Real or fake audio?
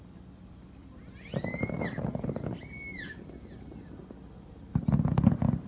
real